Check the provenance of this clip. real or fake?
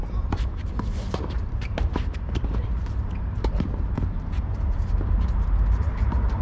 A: fake